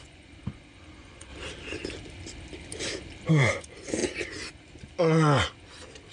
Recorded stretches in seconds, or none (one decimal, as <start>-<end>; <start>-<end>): 1.3-3.3; 4.0-6.1